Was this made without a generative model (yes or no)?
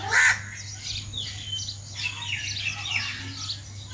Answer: yes